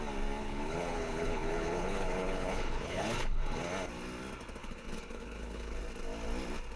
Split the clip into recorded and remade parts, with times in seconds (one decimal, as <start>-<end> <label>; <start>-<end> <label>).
0.0-0.4 recorded; 0.4-3.4 remade; 3.4-4.6 recorded; 4.6-5.8 remade; 5.8-6.8 recorded